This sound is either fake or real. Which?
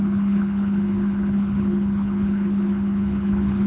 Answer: fake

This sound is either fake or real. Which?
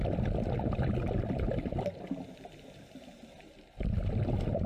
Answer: real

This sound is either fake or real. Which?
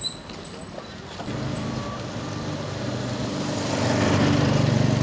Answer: real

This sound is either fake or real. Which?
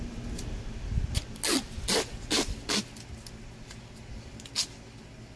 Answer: real